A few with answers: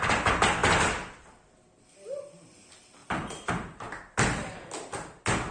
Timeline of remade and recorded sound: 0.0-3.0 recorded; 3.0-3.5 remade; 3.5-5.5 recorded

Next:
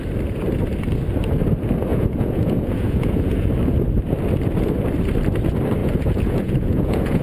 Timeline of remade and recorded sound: 0.0-1.9 recorded; 1.9-3.5 remade; 3.5-5.8 recorded; 5.8-7.2 remade

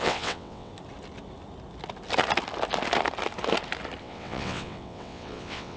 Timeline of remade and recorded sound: 0.0-0.7 remade; 0.7-4.0 recorded; 4.0-5.8 remade